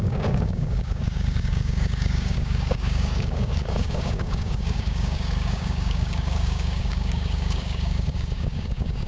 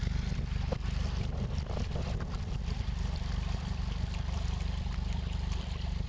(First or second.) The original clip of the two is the second